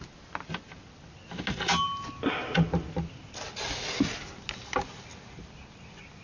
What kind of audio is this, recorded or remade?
recorded